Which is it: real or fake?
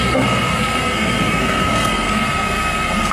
fake